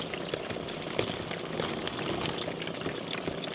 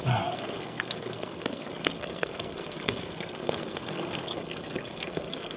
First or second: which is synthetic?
second